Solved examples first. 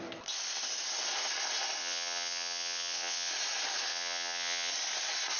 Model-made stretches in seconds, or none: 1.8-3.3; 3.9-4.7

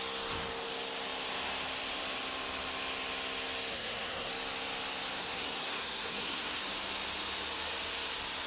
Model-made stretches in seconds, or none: 3.7-4.3; 5.2-6.6

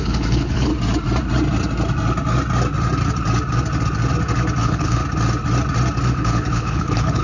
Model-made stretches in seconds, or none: 0.0-0.7; 4.6-5.0; 6.1-7.2

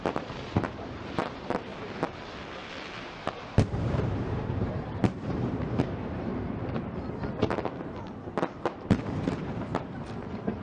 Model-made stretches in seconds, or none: 0.0-1.7; 3.0-6.3; 8.8-10.6

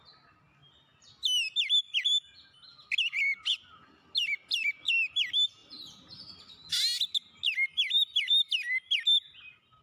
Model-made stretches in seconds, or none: none